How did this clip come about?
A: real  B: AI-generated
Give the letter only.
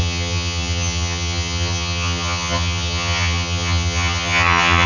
B